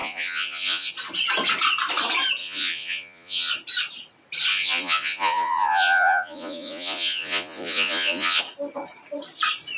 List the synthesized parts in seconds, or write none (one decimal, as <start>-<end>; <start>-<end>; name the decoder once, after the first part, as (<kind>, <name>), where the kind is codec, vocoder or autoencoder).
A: 0.0-0.9 (vocoder, Vocos); 2.4-3.5; 4.5-8.4